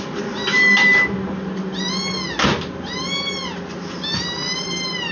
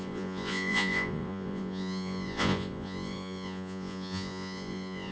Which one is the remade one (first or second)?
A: second